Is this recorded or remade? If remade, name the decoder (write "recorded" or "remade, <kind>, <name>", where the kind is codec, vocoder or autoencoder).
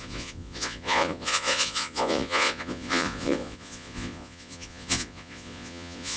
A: remade, vocoder, Vocos